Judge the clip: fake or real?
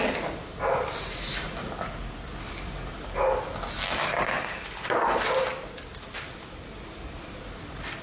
real